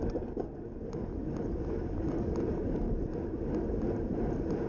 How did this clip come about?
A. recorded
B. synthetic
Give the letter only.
A